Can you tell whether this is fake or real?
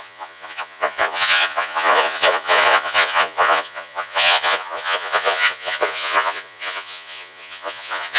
fake